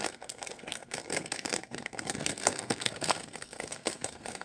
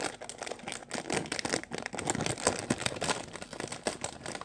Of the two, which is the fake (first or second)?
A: first